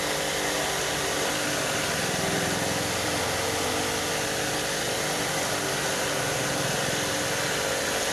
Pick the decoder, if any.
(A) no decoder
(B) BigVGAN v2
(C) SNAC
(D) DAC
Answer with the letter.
A